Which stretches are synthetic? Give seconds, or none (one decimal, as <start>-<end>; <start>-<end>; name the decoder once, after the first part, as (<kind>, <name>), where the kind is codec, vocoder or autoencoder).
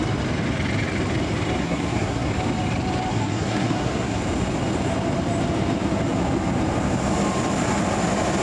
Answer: 1.6-2.3 (codec, SNAC); 3.1-4.2